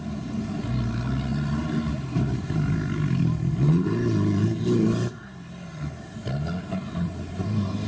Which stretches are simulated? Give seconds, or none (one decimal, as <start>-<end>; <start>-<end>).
none